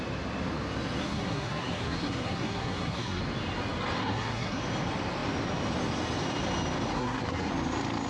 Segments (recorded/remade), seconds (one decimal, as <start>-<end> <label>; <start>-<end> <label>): 0.0-1.0 recorded; 1.0-3.2 remade; 3.2-4.0 recorded; 4.0-4.6 remade; 4.6-6.9 recorded; 6.9-7.5 remade; 7.5-8.1 recorded